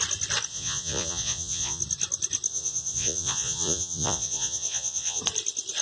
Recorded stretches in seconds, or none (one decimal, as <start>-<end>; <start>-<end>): 0.0-0.5; 1.8-2.5; 5.2-5.8